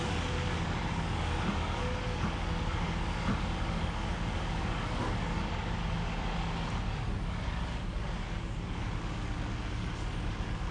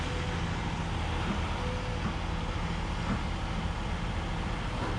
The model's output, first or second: first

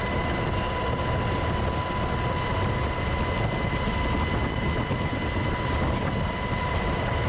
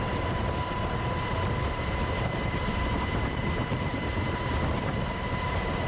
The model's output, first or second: second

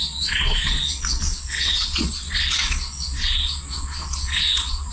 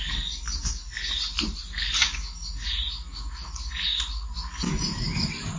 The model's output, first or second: first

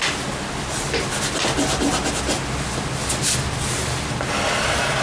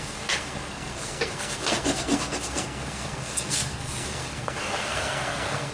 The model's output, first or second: second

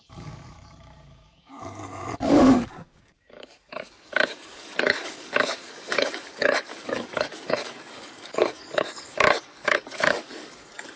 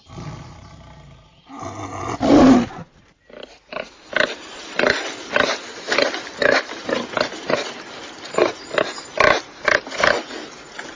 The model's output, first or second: first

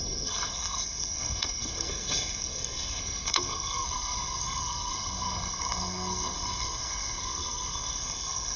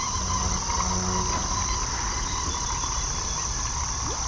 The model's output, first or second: first